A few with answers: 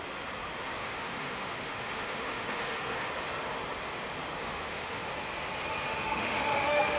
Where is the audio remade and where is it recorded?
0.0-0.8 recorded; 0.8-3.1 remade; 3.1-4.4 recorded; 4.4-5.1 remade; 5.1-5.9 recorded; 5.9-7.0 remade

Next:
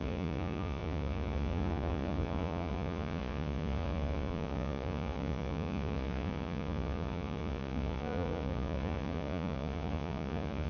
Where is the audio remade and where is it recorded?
0.0-10.7 remade

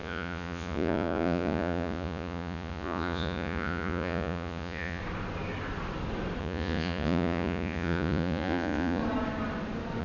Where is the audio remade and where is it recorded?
0.0-5.0 remade; 5.0-6.4 recorded; 6.4-9.0 remade; 9.0-10.0 recorded

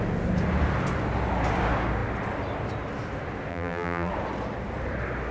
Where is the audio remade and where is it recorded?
0.0-3.5 recorded; 3.5-4.1 remade; 4.1-5.3 recorded

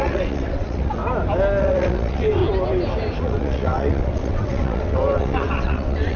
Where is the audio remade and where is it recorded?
0.0-1.0 remade; 1.0-1.6 recorded; 1.6-2.4 remade; 2.4-3.2 recorded; 3.2-6.2 remade

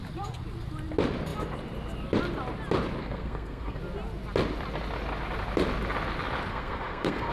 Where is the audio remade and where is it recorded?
0.0-3.0 recorded; 3.0-3.8 remade; 3.8-6.5 recorded; 6.5-7.3 remade

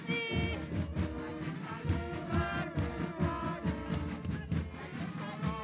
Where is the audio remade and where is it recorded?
0.0-5.6 recorded

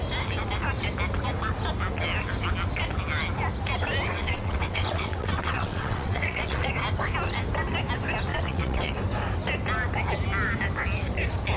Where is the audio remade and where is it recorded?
0.0-4.1 recorded; 4.1-6.7 remade; 6.7-8.3 recorded; 8.3-8.9 remade; 8.9-11.6 recorded